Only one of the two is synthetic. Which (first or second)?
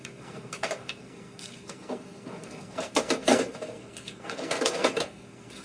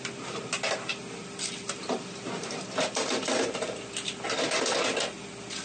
first